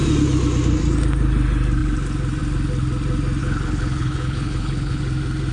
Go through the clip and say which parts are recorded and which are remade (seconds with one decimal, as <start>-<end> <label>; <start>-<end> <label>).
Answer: 0.0-3.4 recorded; 3.4-5.0 remade; 5.0-5.5 recorded